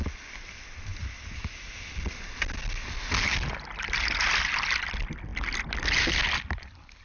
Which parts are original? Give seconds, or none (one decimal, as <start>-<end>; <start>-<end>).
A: 0.0-7.0